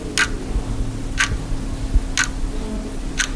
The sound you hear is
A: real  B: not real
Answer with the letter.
A